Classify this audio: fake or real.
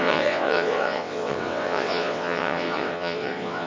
fake